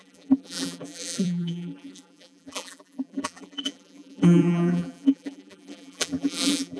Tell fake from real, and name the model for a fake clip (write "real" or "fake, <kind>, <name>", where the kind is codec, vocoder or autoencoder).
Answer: fake, vocoder, BigVGAN v2